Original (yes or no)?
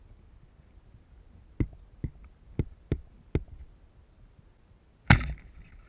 yes